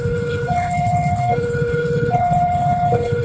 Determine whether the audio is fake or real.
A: fake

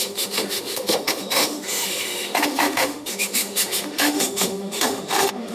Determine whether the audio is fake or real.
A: fake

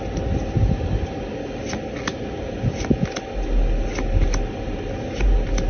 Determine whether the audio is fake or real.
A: real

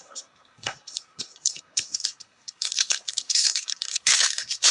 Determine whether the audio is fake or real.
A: fake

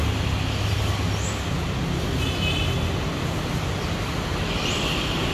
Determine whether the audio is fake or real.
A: real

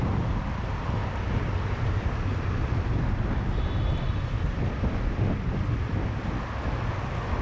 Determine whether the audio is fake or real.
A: real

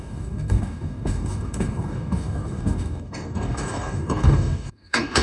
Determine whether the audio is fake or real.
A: fake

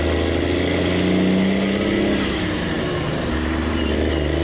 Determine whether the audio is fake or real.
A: real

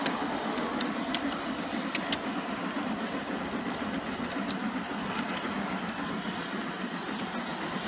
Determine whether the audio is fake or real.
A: real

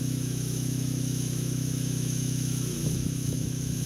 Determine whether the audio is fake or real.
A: fake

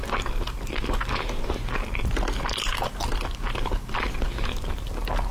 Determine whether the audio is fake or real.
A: real